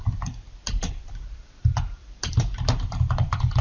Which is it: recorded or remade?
remade